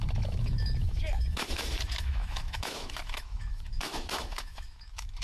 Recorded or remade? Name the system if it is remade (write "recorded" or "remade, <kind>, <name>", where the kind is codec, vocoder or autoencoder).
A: remade, autoencoder, DAC-VAE